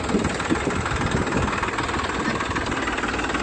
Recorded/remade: recorded